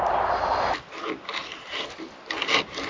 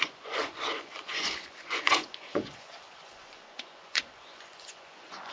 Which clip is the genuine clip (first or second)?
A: first